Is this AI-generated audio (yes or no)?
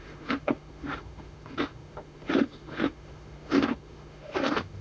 yes